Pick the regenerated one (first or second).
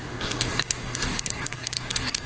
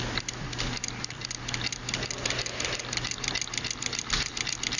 first